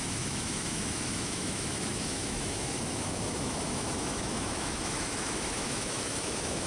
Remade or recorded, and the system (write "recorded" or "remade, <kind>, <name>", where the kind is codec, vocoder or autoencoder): remade, autoencoder, DAC-VAE